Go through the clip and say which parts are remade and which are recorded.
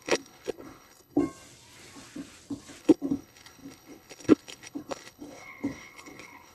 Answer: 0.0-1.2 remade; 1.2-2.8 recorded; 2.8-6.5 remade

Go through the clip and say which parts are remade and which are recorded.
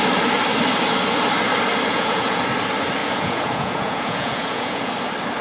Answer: 0.0-1.9 recorded; 1.9-2.4 remade; 2.4-3.0 recorded; 3.0-4.9 remade; 4.9-5.4 recorded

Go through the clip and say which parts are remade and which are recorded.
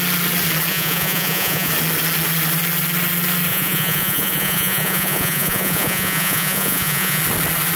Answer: 0.0-0.7 recorded; 0.7-1.7 remade; 1.7-3.5 recorded; 3.5-7.2 remade; 7.2-7.8 recorded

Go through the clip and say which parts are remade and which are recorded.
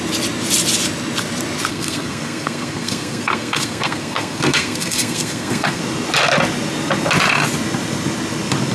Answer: 0.0-1.7 recorded; 1.7-5.8 remade; 5.8-8.7 recorded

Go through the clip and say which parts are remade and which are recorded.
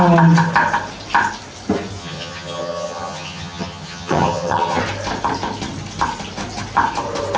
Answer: 0.0-2.0 recorded; 2.0-4.8 remade; 4.8-7.4 recorded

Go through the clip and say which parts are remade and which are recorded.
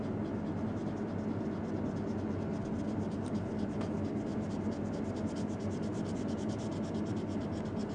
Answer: 0.0-7.9 recorded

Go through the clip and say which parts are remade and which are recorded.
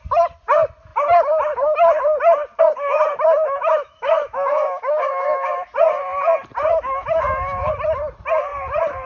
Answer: 0.0-3.6 recorded; 3.6-5.7 remade; 5.7-6.7 recorded; 6.7-7.7 remade; 7.7-9.1 recorded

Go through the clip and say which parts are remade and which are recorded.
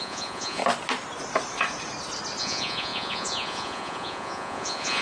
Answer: 0.0-0.6 remade; 0.6-2.4 recorded; 2.4-5.0 remade